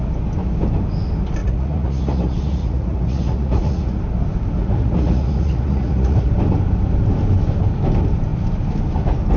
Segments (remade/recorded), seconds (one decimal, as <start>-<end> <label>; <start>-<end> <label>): 0.0-1.4 recorded; 1.4-4.0 remade; 4.0-4.6 recorded; 4.6-6.3 remade; 6.3-9.4 recorded